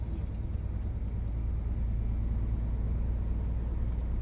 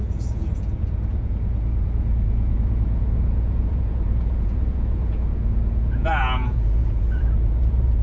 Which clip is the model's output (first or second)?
second